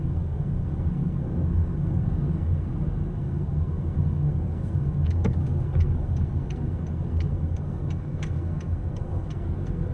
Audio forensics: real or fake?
fake